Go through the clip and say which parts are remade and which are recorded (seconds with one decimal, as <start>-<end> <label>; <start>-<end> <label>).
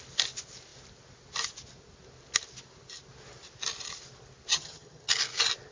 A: 0.0-4.5 recorded; 4.5-5.1 remade; 5.1-5.7 recorded